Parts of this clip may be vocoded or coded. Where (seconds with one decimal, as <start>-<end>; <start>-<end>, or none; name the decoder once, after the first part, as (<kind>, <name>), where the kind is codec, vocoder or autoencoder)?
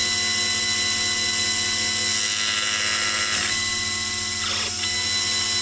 none